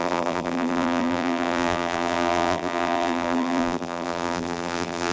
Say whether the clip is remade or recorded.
remade